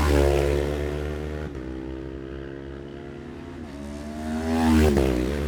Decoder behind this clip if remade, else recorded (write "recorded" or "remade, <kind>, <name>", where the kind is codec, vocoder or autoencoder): recorded